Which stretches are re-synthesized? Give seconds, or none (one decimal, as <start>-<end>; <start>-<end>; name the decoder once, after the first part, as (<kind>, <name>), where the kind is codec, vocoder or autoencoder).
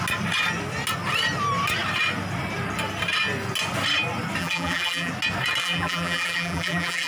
4.4-5.1 (vocoder, BigVGAN v2); 5.6-7.1